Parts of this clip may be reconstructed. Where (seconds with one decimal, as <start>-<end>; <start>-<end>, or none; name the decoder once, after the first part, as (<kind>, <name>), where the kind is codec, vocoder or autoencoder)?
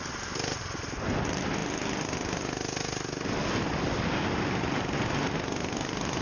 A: none